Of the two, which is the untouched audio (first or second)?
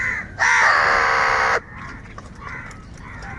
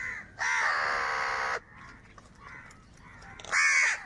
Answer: second